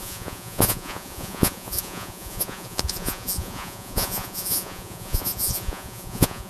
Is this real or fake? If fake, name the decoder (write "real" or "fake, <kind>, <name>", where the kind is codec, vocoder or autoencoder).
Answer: fake, vocoder, Vocos